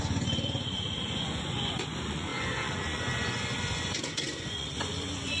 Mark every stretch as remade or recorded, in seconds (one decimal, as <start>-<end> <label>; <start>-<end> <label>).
0.0-5.4 remade